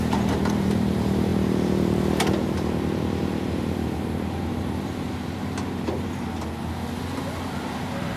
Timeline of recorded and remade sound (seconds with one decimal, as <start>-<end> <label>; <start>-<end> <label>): 0.0-4.5 remade; 4.5-7.7 recorded; 7.7-8.2 remade